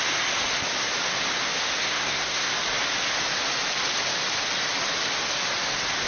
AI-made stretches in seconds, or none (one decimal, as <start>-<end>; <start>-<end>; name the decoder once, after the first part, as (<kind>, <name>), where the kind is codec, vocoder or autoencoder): 1.8-2.5 (codec, SNAC)